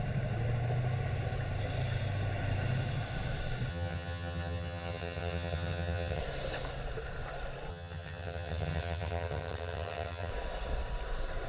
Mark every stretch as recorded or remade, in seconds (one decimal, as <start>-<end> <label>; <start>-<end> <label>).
0.0-3.7 recorded; 3.7-6.2 remade; 6.2-7.7 recorded; 7.7-10.3 remade; 10.3-11.5 recorded